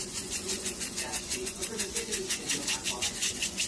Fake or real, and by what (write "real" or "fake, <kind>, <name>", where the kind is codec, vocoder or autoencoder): fake, vocoder, Vocos